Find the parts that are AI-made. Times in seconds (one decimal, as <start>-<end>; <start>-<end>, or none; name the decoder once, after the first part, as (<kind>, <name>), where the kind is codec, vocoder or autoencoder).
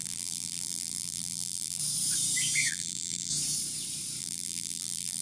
0.0-1.8 (vocoder, BigVGAN v2); 2.7-3.3; 4.2-5.2